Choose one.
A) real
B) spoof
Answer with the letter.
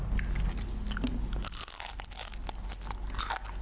A